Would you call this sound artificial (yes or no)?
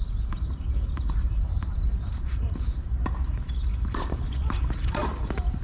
yes